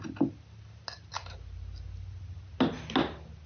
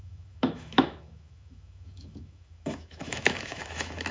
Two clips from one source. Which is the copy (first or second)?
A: second